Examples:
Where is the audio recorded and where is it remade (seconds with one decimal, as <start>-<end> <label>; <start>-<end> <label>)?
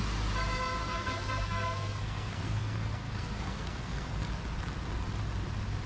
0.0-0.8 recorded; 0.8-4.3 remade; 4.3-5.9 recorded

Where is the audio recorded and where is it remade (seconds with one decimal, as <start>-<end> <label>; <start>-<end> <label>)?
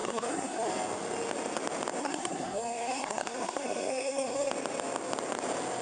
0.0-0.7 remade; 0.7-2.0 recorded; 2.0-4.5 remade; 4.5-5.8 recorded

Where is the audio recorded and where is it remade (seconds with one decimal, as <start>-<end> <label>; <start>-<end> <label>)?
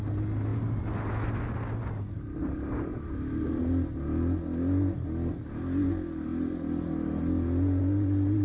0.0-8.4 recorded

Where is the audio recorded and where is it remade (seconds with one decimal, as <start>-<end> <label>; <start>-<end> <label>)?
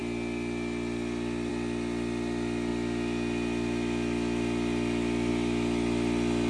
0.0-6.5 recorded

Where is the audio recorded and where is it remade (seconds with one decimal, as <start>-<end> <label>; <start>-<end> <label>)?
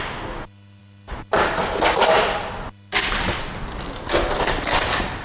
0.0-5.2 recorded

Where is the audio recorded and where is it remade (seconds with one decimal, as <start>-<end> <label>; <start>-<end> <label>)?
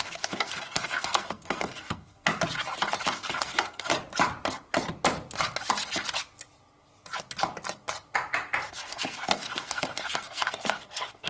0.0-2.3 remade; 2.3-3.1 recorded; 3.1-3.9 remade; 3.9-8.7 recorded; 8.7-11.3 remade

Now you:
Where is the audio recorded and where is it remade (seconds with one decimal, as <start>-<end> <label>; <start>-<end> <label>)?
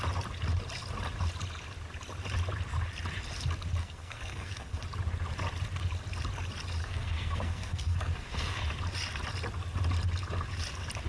0.0-3.8 recorded; 3.8-4.8 remade; 4.8-6.8 recorded; 6.8-8.6 remade; 8.6-11.1 recorded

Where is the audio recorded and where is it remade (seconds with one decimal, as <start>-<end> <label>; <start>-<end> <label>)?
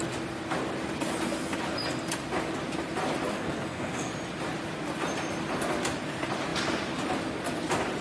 0.0-3.3 recorded; 3.3-4.1 remade; 4.1-8.0 recorded